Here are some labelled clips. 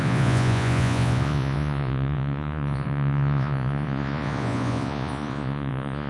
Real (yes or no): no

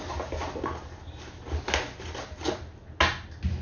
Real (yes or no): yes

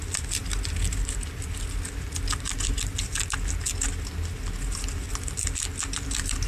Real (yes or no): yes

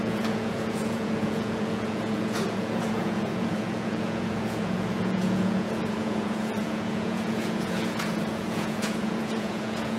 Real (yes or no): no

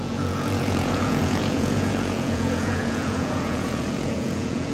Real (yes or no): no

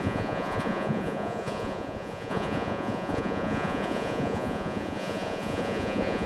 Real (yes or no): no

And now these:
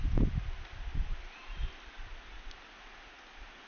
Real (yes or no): yes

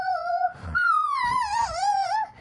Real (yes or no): no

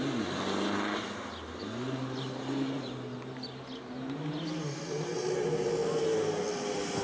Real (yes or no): yes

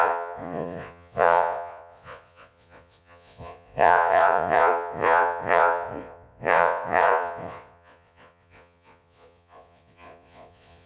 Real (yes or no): no